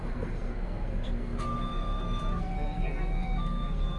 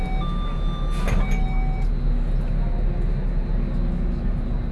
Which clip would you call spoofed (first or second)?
first